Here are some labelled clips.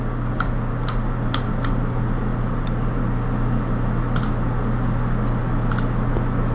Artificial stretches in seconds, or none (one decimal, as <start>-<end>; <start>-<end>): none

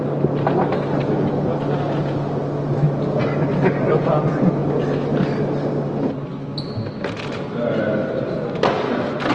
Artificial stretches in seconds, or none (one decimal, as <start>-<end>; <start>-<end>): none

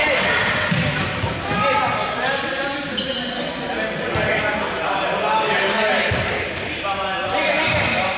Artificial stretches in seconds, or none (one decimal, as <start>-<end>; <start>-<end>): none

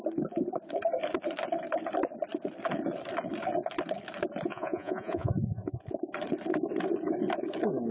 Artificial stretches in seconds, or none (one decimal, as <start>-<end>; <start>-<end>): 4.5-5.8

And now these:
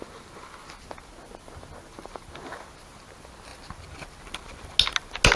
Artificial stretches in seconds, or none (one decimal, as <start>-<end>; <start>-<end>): none